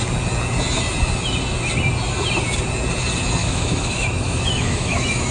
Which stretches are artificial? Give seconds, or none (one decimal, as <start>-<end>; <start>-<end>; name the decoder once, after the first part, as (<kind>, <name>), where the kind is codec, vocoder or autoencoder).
3.4-5.3 (autoencoder, DAC-VAE)